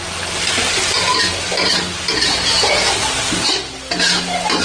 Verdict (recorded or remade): recorded